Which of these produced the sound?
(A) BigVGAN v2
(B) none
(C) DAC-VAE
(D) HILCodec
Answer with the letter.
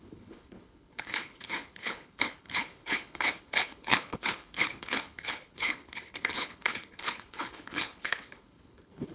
D